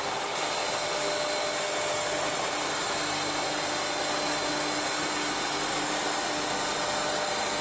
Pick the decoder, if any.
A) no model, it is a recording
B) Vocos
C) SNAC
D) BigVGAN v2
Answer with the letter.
A